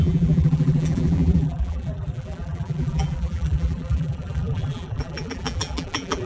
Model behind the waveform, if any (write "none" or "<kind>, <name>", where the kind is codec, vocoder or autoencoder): vocoder, BigVGAN v2